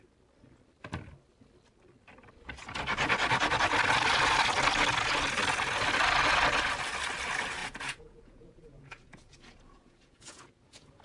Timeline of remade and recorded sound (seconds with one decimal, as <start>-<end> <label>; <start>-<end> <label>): 0.0-7.6 recorded; 7.6-11.0 remade